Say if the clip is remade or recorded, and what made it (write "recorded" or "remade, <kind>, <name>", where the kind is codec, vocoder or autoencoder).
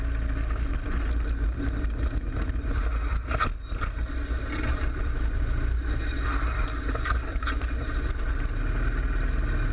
recorded